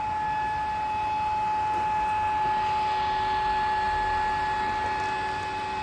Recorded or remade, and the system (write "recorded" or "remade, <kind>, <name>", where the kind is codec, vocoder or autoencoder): recorded